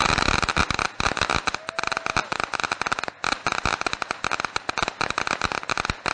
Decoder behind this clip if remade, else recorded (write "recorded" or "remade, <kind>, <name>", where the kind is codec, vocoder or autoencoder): recorded